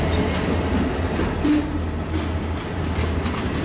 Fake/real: real